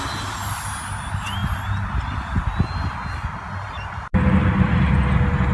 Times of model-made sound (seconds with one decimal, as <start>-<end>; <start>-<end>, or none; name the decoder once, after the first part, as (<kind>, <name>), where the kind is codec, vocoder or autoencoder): none